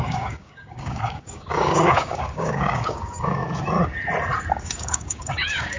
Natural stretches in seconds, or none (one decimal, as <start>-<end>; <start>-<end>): 3.4-4.6